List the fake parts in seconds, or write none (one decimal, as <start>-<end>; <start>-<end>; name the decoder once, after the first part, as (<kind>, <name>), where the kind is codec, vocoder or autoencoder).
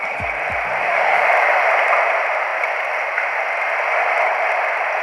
0.8-1.3 (autoencoder, DAC-VAE)